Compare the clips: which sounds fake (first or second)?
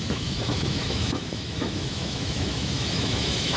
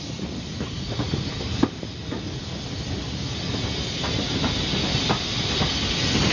first